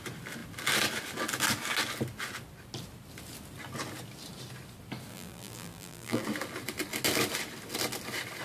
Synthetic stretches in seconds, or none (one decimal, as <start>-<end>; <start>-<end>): 5.1-6.2